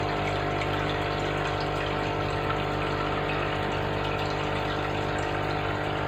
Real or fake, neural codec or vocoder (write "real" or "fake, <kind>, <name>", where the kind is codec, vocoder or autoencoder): real